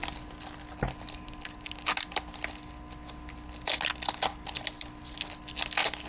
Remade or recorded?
recorded